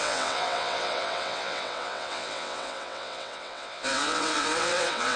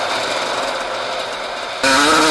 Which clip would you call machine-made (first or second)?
first